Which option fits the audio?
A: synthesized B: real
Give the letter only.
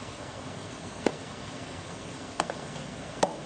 A